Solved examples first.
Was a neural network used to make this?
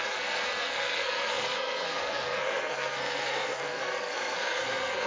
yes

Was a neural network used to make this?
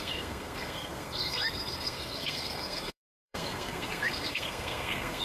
yes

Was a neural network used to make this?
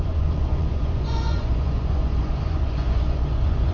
yes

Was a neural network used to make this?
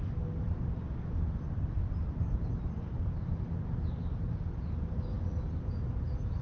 no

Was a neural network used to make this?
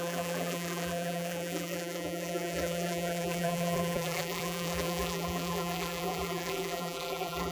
yes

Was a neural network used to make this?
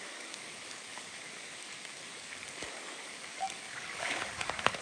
yes